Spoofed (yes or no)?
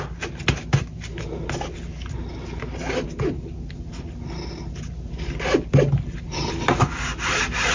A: no